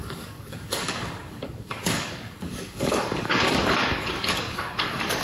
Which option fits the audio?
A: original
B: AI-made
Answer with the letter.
B